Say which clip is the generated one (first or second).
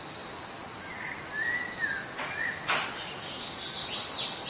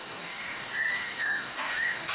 second